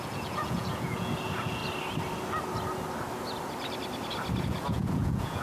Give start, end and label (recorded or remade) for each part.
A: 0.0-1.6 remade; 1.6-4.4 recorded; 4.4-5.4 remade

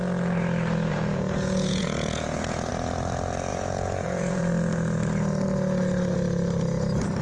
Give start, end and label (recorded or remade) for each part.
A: 0.0-0.9 recorded; 0.9-2.7 remade; 2.7-3.5 recorded; 3.5-4.4 remade; 4.4-7.2 recorded

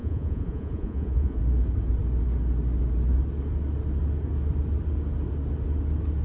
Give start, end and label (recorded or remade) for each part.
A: 0.0-1.4 remade; 1.4-6.2 recorded

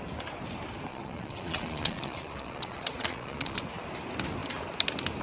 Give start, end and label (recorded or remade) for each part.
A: 0.0-0.9 recorded; 0.9-3.6 remade; 3.6-5.2 recorded